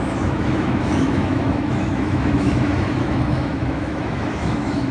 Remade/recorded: remade